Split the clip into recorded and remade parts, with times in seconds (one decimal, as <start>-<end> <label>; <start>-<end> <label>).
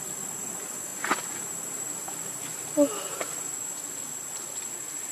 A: 0.0-5.1 recorded